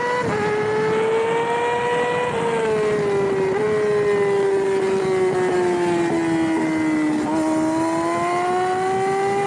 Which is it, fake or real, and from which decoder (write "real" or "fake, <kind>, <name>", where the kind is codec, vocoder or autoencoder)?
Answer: real